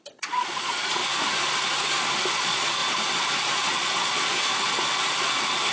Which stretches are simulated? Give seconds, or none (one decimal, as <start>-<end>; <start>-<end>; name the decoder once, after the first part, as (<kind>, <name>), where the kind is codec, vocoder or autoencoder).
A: 0.0-1.0 (vocoder, Vocos); 2.3-2.8; 3.4-4.5